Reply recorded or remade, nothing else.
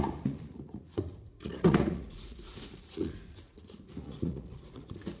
remade